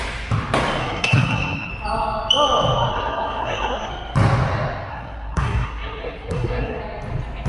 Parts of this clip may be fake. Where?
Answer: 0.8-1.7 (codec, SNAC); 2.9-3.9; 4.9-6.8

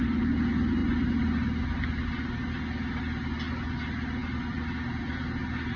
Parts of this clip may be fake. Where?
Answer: none

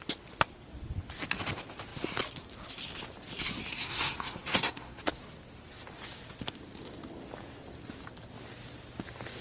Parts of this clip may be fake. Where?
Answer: 3.7-5.0 (codec, SNAC)

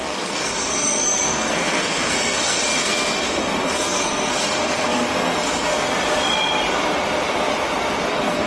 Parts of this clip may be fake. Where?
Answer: 0.0-5.7 (codec, SNAC); 8.1-8.5

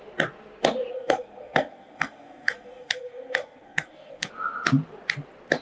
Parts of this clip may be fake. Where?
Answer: 0.9-4.3 (codec, SNAC)

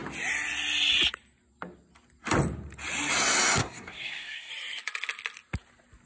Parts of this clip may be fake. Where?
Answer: 3.6-4.5 (codec, SNAC)

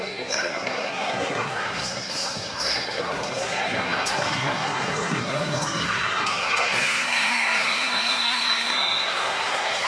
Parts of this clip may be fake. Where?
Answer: 0.0-9.9 (codec, SNAC)